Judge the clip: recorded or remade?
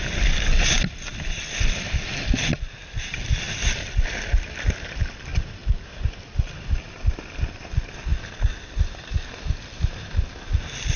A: recorded